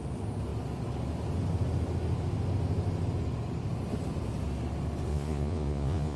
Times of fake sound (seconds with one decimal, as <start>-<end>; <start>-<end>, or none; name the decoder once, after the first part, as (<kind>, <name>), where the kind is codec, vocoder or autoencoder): 5.1-6.2 (vocoder, Vocos)